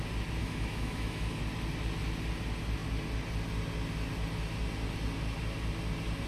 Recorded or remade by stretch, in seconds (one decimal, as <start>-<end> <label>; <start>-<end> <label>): 0.0-0.4 recorded; 0.4-1.4 remade; 1.4-6.3 recorded